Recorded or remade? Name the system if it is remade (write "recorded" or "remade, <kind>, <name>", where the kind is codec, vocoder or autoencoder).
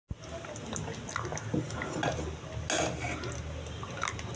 recorded